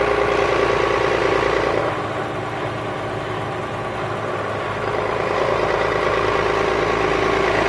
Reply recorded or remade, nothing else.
recorded